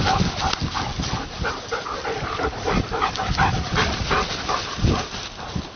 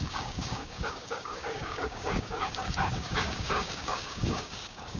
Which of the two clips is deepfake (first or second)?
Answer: second